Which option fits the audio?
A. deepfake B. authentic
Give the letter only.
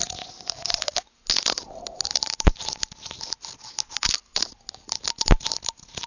B